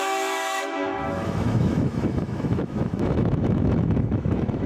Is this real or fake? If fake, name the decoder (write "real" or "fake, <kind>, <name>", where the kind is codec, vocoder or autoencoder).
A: fake, autoencoder, DAC-VAE